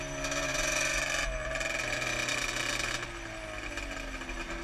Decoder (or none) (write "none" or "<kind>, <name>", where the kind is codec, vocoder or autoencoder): none